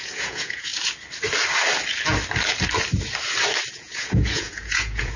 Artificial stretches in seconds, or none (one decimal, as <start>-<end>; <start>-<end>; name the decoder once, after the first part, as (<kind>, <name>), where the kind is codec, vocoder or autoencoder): 0.0-0.7 (vocoder, Vocos); 3.7-5.2